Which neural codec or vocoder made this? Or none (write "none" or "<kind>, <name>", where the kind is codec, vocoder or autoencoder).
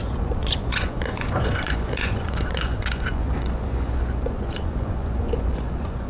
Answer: vocoder, Vocos